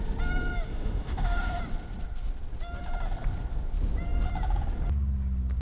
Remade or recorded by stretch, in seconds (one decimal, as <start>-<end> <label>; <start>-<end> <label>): 0.0-0.7 recorded; 0.7-1.6 remade; 1.6-5.6 recorded